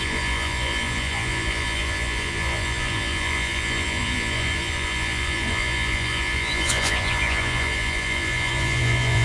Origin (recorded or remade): remade